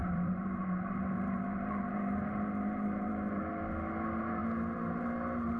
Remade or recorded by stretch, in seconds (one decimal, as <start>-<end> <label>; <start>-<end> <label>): 0.0-3.4 remade; 3.4-5.6 recorded